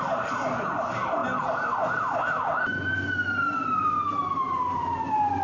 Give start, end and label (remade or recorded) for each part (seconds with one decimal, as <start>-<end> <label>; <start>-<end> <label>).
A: 0.0-5.4 recorded

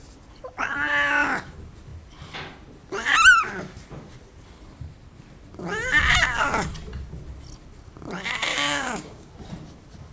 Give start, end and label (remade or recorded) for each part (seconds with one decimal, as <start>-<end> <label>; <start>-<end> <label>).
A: 0.0-8.5 recorded; 8.5-9.3 remade; 9.3-10.1 recorded